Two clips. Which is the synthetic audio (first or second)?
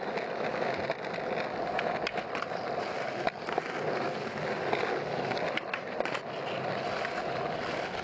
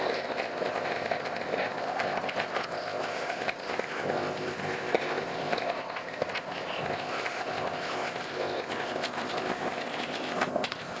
second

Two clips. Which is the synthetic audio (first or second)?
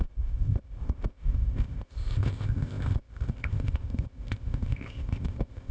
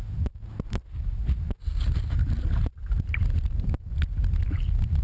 first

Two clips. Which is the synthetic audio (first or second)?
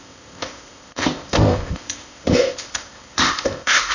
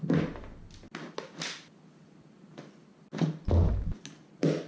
first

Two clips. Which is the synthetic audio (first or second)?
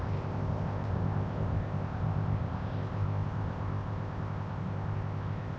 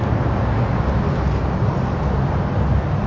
first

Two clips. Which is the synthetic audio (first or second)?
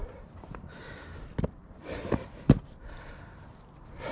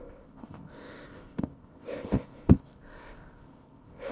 second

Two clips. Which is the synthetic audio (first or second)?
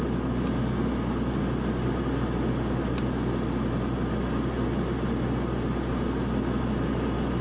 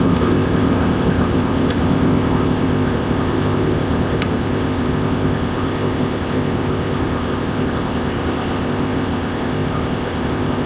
second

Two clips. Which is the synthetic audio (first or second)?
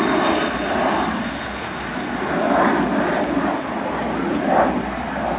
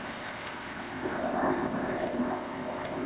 second